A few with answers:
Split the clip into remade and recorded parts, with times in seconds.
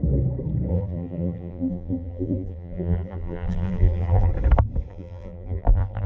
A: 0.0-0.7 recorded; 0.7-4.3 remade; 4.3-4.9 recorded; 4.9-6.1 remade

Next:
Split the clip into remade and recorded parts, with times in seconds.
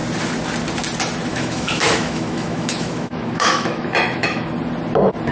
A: 0.0-1.3 recorded; 1.3-4.5 remade; 4.5-5.3 recorded